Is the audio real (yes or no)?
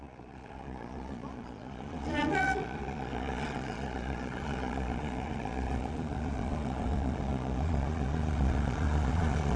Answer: no